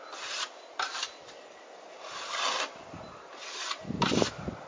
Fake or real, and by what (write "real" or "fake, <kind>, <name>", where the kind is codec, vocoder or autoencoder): real